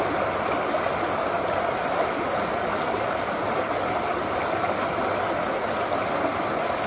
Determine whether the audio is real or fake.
real